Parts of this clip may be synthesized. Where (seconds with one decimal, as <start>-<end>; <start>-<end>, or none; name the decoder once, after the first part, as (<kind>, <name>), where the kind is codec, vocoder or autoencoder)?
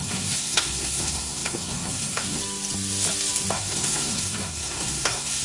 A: 0.0-2.4 (codec, SNAC); 3.5-5.4